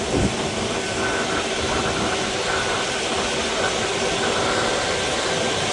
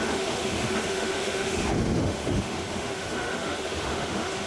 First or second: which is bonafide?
first